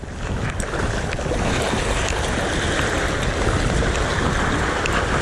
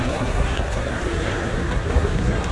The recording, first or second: first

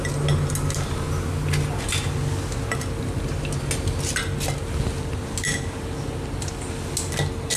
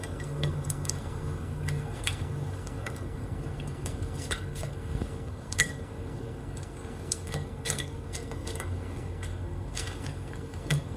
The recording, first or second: first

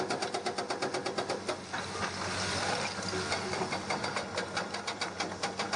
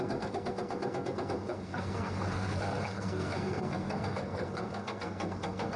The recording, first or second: first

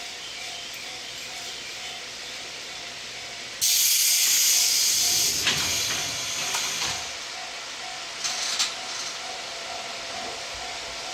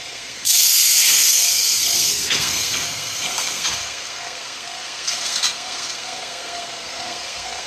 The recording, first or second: first